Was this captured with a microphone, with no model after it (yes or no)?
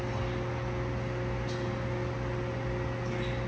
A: yes